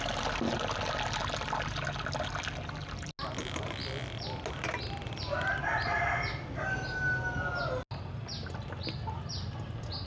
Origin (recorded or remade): recorded